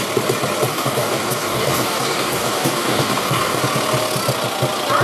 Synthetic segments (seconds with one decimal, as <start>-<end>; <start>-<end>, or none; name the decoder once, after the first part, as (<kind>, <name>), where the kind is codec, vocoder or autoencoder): 0.7-3.6 (codec, DAC)